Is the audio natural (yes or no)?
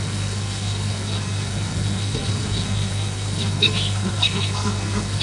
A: no